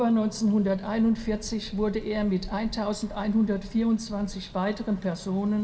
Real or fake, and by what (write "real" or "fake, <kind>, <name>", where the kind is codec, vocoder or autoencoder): real